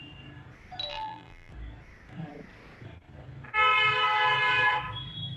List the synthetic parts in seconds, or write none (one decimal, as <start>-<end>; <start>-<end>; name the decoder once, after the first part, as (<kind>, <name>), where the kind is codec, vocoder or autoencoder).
0.9-1.5 (vocoder, BigVGAN v2)